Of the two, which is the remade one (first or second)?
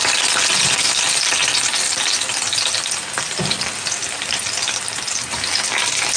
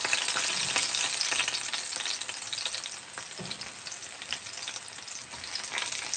first